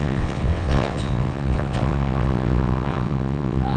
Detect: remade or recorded remade